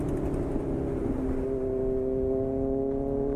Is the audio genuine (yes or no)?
yes